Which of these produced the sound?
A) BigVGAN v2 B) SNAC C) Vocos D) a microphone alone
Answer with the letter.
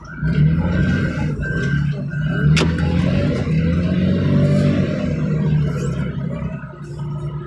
D